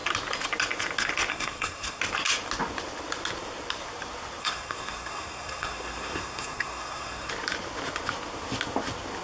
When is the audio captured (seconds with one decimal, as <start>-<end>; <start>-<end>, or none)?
0.0-1.3; 2.0-4.4; 7.3-9.2

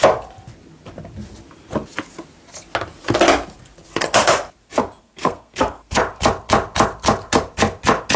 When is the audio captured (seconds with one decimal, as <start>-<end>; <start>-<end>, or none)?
0.0-5.0; 6.0-8.2